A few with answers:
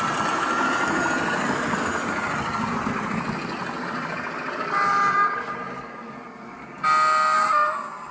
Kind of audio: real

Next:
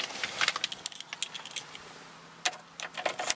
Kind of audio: real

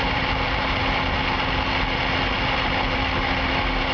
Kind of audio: real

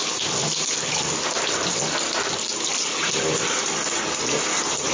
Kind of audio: real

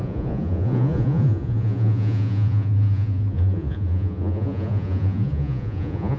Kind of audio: fake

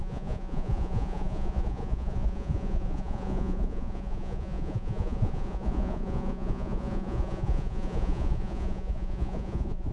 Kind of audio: fake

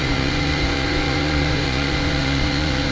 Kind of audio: fake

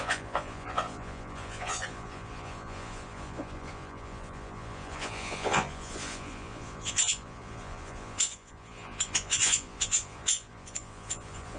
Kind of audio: fake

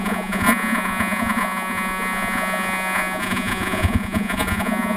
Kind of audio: fake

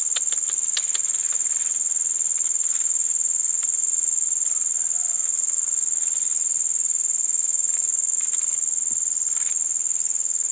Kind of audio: real